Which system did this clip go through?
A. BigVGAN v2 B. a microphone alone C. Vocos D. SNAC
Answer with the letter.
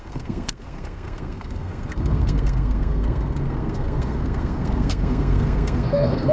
D